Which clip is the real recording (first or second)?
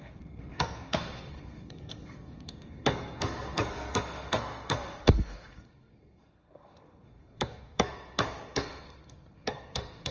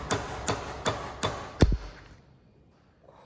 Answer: second